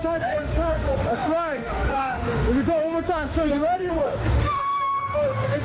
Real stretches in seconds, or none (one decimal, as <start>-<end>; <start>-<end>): none